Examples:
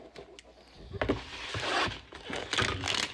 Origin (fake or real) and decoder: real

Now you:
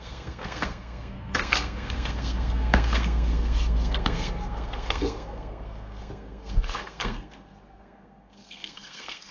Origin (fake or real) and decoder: fake, codec, SNAC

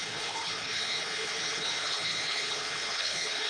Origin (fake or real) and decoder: fake, codec, HILCodec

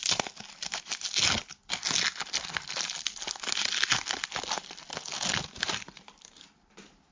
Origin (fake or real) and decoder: real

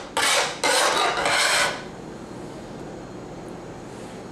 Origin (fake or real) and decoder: real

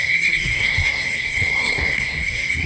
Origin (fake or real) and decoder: fake, codec, SNAC